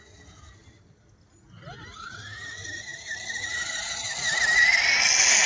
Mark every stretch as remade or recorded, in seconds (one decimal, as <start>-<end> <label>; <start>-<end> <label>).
0.0-5.5 recorded

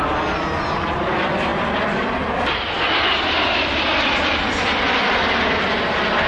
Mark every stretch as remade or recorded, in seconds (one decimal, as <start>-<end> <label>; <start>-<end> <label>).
0.0-6.3 recorded

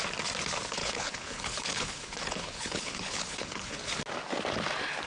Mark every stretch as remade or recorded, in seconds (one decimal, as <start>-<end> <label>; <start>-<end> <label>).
0.0-0.8 recorded; 0.8-3.9 remade; 3.9-5.1 recorded